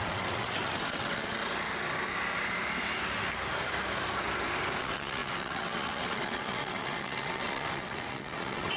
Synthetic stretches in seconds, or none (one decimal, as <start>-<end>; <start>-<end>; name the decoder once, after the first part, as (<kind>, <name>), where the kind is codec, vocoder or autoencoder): 0.0-1.4 (vocoder, WaveNeXt); 4.8-8.8